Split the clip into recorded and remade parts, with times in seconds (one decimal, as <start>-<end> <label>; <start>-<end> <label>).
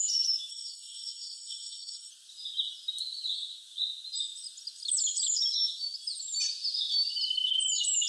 0.0-0.5 recorded; 0.5-2.1 remade; 2.1-8.1 recorded